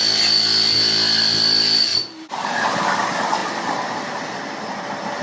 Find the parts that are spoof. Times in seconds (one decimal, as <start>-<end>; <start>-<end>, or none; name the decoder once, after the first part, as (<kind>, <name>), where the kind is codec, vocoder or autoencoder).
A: 1.9-2.8 (vocoder, BigVGAN v2); 3.4-4.6